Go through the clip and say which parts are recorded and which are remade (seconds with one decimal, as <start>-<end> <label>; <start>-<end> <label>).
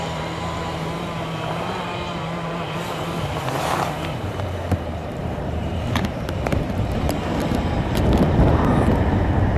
0.0-8.7 remade; 8.7-9.6 recorded